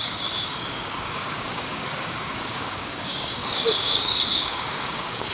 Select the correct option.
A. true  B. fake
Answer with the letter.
B